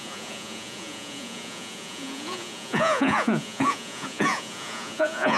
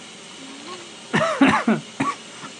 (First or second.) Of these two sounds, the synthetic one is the first